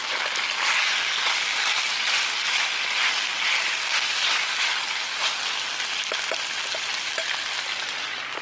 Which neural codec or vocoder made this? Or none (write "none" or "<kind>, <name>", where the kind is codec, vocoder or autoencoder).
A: none